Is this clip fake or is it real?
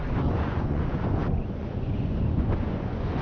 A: fake